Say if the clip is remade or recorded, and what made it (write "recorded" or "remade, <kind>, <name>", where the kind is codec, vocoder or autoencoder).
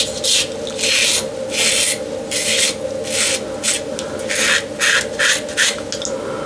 recorded